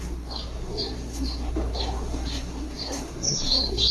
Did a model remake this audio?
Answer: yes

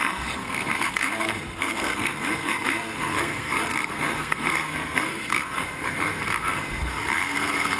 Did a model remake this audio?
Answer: yes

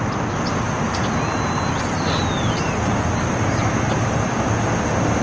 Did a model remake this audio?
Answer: no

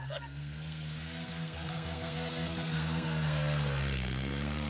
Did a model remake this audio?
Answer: yes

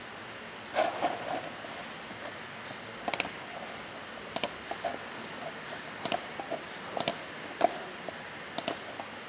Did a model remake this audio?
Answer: no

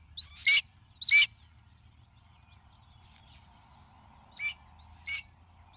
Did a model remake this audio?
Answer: no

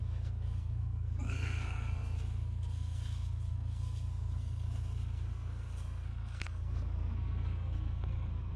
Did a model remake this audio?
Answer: yes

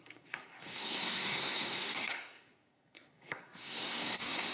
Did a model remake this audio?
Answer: yes